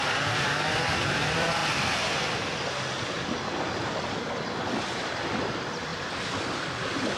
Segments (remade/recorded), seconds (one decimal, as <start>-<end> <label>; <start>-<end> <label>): 0.0-1.6 remade; 1.6-4.7 recorded; 4.7-7.2 remade